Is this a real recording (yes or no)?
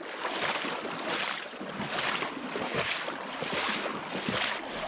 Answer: yes